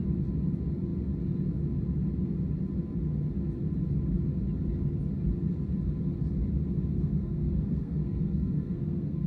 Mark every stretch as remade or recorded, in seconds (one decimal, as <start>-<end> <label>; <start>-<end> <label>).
0.0-6.9 recorded; 6.9-9.3 remade